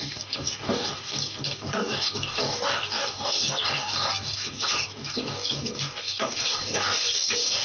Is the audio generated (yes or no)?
yes